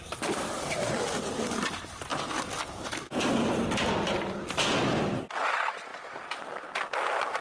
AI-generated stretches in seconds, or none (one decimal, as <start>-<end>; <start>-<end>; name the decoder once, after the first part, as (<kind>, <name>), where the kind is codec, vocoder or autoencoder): none